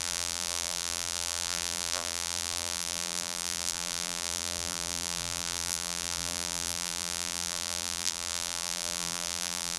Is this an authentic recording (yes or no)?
no